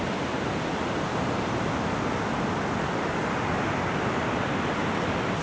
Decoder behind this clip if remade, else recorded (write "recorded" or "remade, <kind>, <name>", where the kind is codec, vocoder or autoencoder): recorded